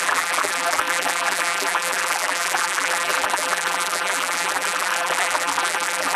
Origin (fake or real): fake